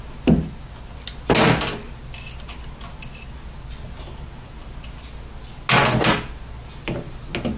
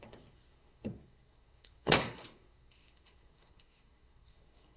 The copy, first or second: second